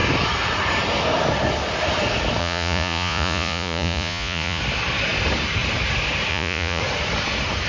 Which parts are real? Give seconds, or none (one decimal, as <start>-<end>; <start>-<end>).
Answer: 0.0-2.4; 4.6-6.3; 6.8-7.7